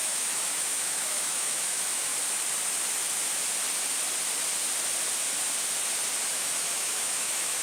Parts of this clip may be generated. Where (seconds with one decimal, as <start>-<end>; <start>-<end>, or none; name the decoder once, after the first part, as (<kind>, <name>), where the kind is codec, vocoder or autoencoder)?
0.0-2.1 (autoencoder, DAC-VAE); 6.3-7.6